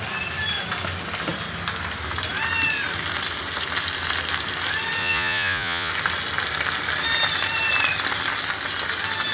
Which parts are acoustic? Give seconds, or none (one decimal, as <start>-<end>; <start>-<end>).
0.0-5.0; 5.9-9.3